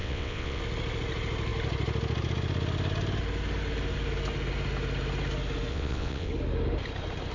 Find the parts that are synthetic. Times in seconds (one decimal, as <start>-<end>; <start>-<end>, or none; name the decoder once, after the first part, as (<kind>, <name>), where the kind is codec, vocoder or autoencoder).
0.0-0.6 (vocoder, WaveNeXt); 5.7-6.3